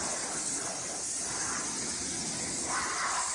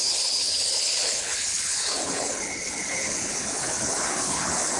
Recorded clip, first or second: first